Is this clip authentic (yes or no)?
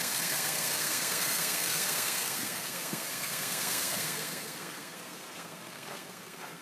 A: no